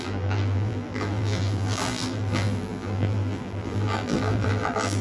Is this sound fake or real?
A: fake